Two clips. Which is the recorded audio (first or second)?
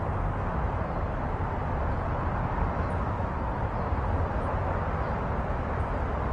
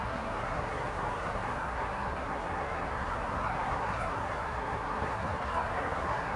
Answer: first